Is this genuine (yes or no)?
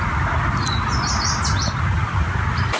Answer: yes